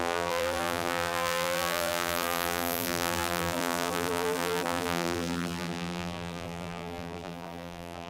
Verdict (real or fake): fake